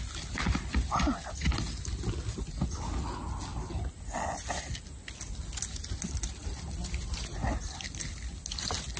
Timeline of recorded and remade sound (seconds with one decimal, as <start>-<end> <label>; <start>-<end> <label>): 0.0-9.0 recorded

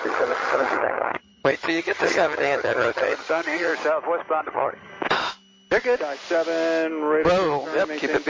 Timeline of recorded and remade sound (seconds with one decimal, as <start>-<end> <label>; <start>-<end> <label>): 0.0-3.7 remade; 3.7-4.4 recorded; 4.4-4.9 remade; 4.9-8.3 recorded

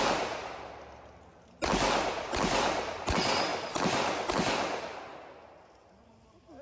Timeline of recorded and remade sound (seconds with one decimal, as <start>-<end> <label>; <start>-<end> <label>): 0.0-6.6 recorded